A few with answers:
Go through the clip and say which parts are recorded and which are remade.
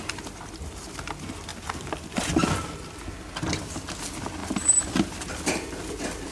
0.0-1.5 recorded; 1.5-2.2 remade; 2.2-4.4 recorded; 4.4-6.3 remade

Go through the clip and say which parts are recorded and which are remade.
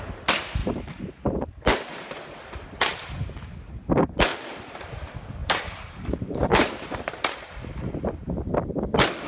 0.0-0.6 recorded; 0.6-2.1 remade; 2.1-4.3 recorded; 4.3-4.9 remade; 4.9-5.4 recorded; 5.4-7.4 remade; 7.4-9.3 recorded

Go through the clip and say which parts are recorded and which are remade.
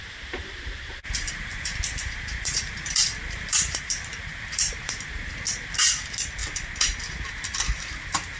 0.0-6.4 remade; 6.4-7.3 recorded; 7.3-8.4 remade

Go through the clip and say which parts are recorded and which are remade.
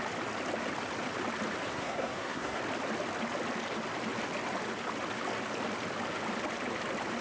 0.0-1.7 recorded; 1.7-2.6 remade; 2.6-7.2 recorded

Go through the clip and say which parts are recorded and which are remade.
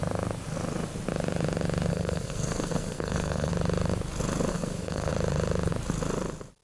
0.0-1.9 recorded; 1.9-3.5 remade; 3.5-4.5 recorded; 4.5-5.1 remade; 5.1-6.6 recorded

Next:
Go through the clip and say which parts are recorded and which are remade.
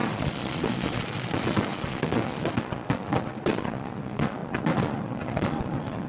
0.0-6.1 remade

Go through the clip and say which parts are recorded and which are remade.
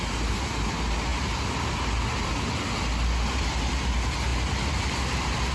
0.0-5.5 recorded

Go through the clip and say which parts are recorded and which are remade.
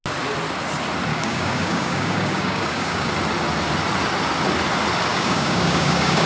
0.0-1.1 recorded; 1.1-3.1 remade; 3.1-5.1 recorded; 5.1-6.3 remade